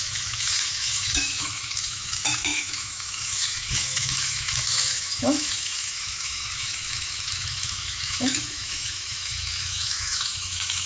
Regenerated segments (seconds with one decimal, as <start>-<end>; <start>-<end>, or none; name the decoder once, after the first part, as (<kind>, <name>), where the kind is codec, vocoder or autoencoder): 0.0-10.9 (autoencoder, DAC-VAE)